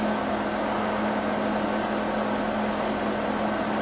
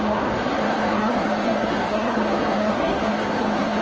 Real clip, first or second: first